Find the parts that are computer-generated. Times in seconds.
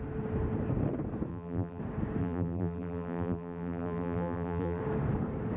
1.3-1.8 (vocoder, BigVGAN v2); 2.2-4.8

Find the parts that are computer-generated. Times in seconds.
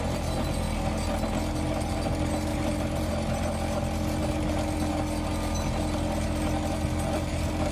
2.5-3.1 (vocoder, BigVGAN v2)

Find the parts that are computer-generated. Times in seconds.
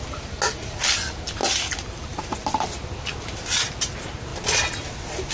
none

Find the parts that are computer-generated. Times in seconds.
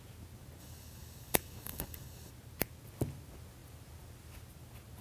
0.6-2.3 (codec, DAC)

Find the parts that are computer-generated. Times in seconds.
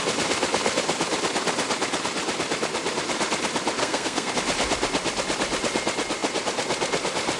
3.8-4.3 (codec, SNAC)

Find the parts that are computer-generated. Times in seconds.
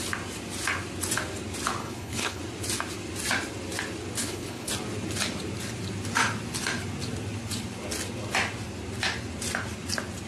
1.8-2.4 (codec, HILCodec); 4.2-4.7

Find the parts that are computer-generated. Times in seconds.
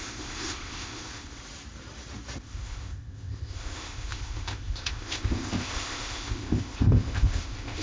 0.0-1.4 (codec, ZipCodec); 2.4-7.8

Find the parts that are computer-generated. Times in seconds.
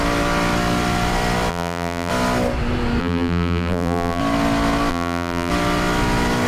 1.5-2.1 (vocoder, BigVGAN v2); 3.0-4.2; 4.9-5.5